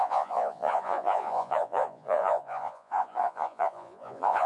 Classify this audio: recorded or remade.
remade